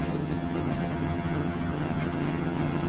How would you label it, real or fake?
fake